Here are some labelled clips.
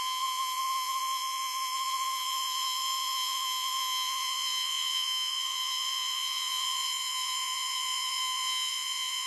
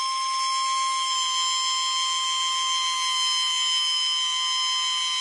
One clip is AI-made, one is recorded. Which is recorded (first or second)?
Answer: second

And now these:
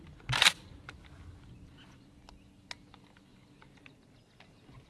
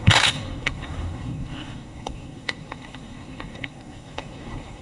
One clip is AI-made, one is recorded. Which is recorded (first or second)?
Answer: first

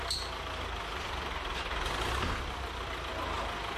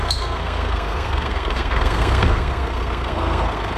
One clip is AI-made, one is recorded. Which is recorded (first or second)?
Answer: first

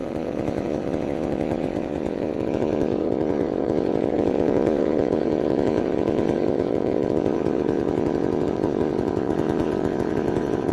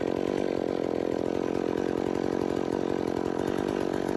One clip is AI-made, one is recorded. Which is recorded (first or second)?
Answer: second